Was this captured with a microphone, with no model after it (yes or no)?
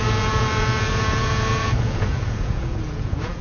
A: no